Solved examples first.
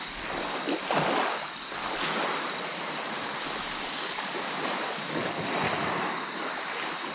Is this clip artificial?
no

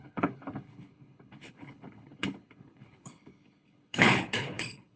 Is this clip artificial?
yes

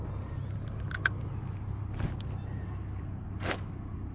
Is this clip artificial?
no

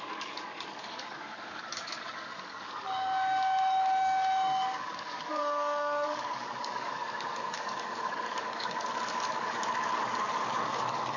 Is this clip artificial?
yes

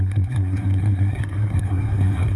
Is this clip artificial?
yes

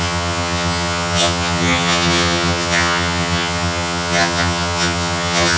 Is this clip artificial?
yes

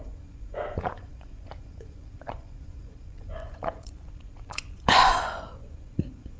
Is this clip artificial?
yes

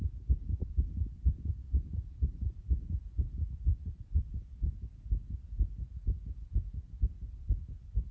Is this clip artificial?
no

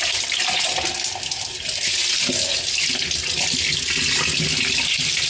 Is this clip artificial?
no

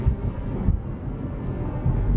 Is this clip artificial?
yes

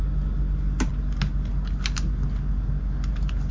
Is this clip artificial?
no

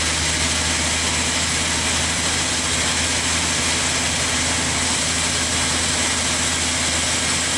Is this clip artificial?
no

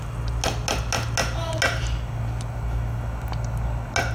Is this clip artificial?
no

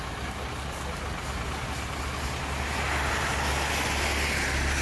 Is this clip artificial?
no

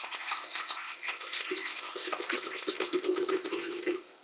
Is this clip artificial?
yes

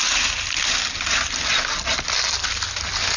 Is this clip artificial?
no